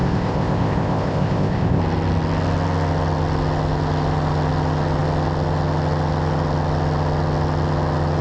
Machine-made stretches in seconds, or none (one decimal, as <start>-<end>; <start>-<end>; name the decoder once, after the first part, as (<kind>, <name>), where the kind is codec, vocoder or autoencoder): 0.0-1.8 (codec, ZipCodec)

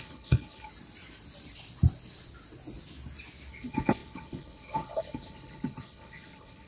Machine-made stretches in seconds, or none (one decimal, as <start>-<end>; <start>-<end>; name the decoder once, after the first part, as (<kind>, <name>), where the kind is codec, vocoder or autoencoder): 0.0-0.7 (codec, HILCodec); 3.5-6.7

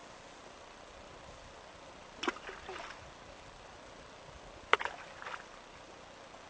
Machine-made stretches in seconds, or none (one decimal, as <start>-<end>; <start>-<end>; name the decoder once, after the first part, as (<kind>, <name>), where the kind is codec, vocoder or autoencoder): none

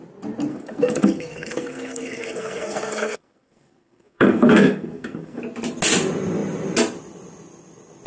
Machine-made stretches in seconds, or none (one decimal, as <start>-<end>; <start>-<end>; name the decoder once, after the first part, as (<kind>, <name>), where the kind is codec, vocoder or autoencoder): 0.5-5.4 (codec, SNAC)

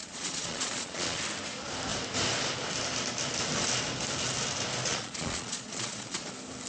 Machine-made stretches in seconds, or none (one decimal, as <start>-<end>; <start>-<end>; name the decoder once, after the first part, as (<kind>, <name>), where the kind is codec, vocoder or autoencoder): 0.0-1.2 (vocoder, Vocos); 4.8-6.3